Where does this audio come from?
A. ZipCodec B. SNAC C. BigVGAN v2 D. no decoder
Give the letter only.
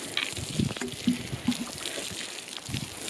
D